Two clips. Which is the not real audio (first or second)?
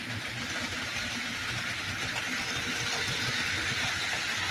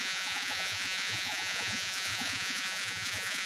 second